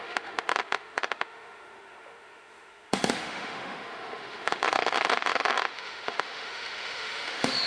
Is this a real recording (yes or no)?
no